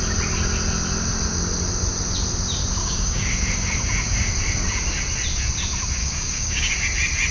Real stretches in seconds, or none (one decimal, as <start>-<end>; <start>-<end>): 0.0-2.8; 3.3-6.0; 6.7-7.3